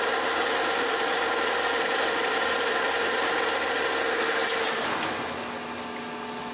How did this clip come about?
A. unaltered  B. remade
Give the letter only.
A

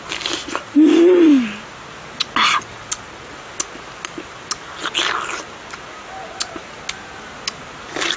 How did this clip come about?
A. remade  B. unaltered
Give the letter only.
B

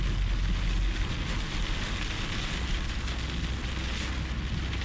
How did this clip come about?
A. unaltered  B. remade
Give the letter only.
A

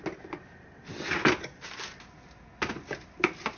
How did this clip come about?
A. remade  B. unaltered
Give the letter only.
B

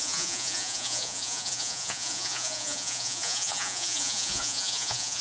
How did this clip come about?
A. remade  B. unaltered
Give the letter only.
A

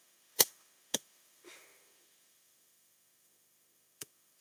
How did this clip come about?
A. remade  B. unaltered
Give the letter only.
A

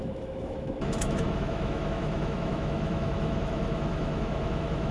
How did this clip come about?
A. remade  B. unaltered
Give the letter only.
A